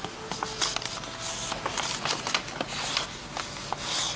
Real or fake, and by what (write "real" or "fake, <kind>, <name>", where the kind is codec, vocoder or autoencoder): real